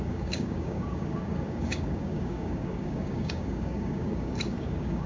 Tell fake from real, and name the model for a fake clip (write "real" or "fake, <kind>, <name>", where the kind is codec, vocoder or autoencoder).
fake, codec, DAC